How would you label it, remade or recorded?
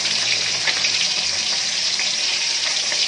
remade